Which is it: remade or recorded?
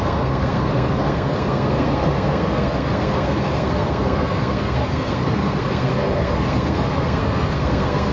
remade